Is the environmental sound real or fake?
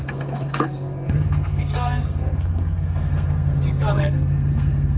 fake